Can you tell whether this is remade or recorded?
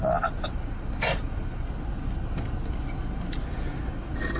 recorded